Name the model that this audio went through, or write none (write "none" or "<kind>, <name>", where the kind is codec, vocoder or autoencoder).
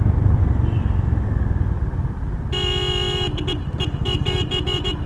none